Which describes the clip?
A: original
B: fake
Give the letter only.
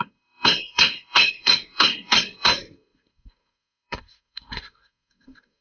B